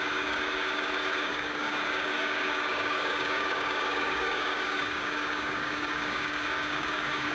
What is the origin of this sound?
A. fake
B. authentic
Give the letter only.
A